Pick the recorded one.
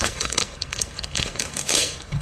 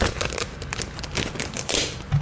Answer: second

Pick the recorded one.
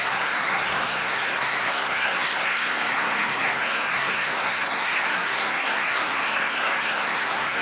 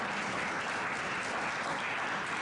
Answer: second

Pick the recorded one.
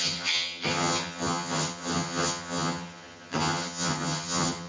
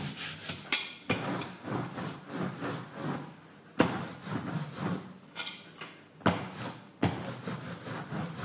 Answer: second